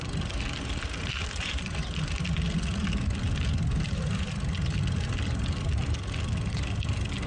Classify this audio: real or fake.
real